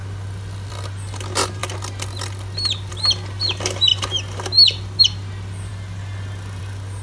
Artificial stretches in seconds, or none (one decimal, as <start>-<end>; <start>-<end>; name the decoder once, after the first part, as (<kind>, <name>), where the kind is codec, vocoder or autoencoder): none